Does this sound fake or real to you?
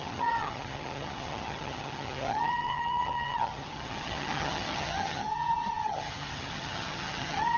fake